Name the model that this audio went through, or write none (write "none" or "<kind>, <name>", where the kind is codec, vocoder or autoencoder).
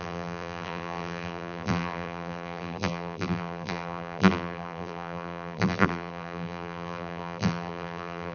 vocoder, BigVGAN v2